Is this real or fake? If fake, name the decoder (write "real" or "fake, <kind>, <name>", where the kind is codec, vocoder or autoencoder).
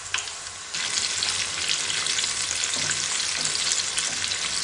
real